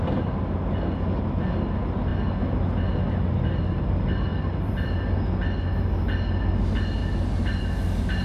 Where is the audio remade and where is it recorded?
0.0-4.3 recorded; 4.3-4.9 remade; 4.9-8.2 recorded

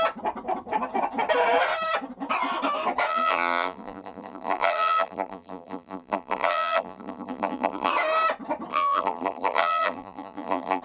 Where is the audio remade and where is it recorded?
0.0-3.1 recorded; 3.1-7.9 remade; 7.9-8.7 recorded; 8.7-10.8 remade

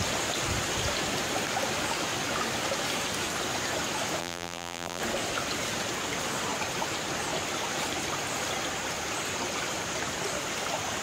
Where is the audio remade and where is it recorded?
0.0-4.2 recorded; 4.2-5.0 remade; 5.0-11.0 recorded